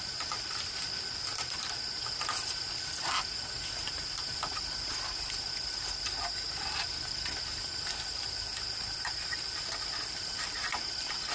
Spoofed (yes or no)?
no